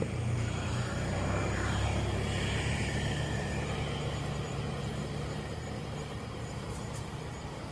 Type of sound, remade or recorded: remade